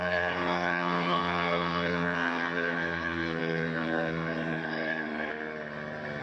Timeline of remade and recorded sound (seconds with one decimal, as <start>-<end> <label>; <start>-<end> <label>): 0.0-5.3 remade; 5.3-6.2 recorded